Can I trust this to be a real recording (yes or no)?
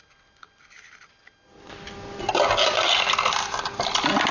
yes